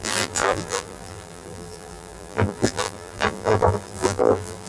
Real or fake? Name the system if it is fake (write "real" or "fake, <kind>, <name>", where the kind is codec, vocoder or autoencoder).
fake, vocoder, BigVGAN v2